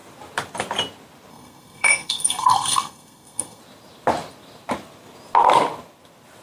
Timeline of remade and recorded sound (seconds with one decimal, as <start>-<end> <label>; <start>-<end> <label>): 0.0-1.3 recorded; 1.3-3.6 remade; 3.6-6.4 recorded